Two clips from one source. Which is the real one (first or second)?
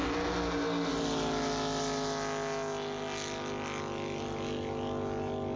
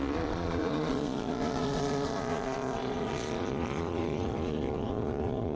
first